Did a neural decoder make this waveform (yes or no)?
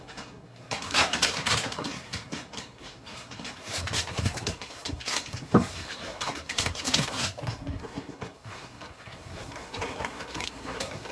yes